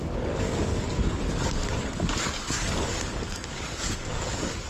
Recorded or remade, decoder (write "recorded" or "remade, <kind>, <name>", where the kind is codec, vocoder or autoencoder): remade, codec, DAC